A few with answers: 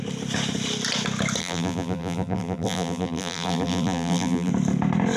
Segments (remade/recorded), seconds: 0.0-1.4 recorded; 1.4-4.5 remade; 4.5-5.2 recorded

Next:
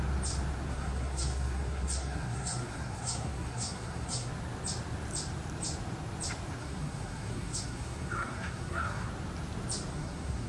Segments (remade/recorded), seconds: 0.0-0.7 recorded; 0.7-4.3 remade; 4.3-6.6 recorded; 6.6-9.1 remade; 9.1-9.9 recorded; 9.9-10.5 remade

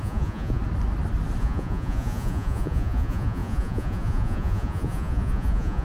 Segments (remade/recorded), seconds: 0.0-0.6 remade; 0.6-1.4 recorded; 1.4-5.8 remade

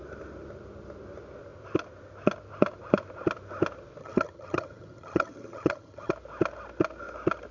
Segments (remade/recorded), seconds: 0.0-4.0 recorded; 4.0-6.1 remade; 6.1-7.5 recorded

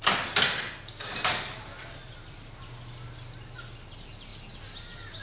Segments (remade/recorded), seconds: 0.0-5.2 recorded

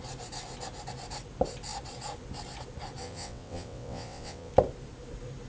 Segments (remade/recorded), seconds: 0.0-3.0 recorded; 3.0-4.5 remade; 4.5-5.5 recorded

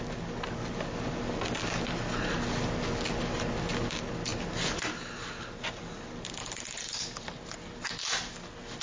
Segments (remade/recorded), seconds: 0.0-8.8 recorded

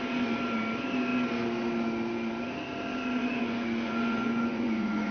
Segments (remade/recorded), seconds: 0.0-3.2 recorded; 3.2-5.1 remade